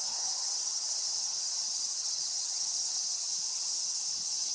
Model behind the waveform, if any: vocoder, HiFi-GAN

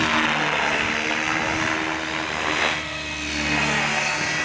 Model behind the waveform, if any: none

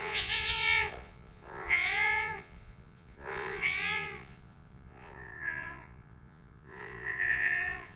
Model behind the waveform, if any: vocoder, Vocos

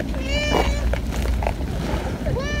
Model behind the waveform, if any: none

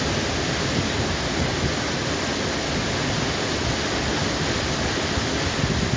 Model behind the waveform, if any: none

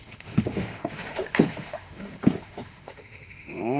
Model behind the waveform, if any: autoencoder, DAC-VAE